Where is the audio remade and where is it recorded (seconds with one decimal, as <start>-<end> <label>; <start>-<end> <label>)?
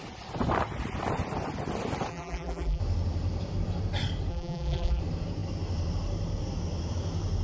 0.0-2.1 recorded; 2.1-2.8 remade; 2.8-4.3 recorded; 4.3-5.0 remade; 5.0-7.4 recorded